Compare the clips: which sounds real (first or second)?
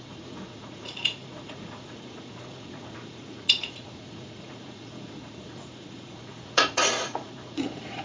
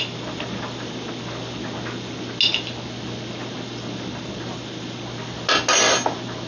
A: second